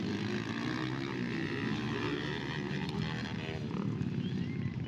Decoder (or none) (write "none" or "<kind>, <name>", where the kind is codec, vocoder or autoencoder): none